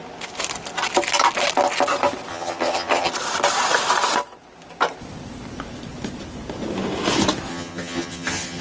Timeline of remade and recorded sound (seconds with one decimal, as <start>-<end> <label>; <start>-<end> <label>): 0.0-2.3 recorded; 2.3-3.1 remade; 3.1-7.5 recorded; 7.5-8.6 remade

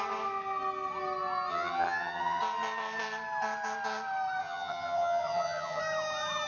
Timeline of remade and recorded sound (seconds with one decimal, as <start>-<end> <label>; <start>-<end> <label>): 0.0-1.5 recorded; 1.5-2.4 remade; 2.4-4.4 recorded; 4.4-5.8 remade; 5.8-6.5 recorded

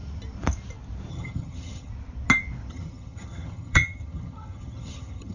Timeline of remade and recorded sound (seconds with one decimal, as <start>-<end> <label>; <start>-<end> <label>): 0.0-1.1 recorded; 1.1-1.9 remade; 1.9-2.7 recorded; 2.7-5.3 remade

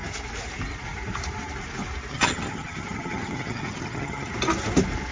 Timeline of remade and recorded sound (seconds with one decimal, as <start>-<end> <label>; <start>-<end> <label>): 0.0-2.1 recorded; 2.1-4.3 remade; 4.3-5.1 recorded

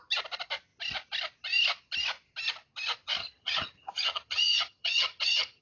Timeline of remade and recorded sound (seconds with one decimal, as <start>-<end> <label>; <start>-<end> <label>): 0.0-3.2 recorded; 3.2-5.6 remade

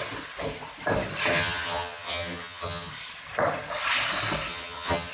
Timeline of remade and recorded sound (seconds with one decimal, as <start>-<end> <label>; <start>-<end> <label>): 0.0-1.3 recorded; 1.3-2.9 remade; 2.9-4.5 recorded; 4.5-5.1 remade

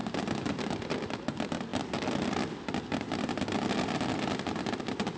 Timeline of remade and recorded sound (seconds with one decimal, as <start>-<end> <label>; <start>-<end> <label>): 0.0-5.2 recorded

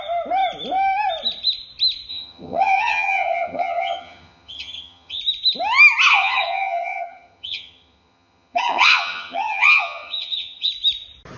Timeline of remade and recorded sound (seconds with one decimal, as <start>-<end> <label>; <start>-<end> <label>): 0.0-2.1 recorded; 2.1-5.2 remade; 5.2-6.1 recorded; 6.1-10.7 remade; 10.7-11.4 recorded